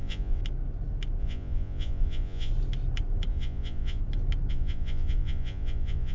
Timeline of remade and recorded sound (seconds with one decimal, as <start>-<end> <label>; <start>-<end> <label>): 0.0-0.4 remade; 0.4-1.2 recorded; 1.2-2.5 remade; 2.5-3.3 recorded; 3.3-4.0 remade; 4.0-4.5 recorded; 4.5-6.1 remade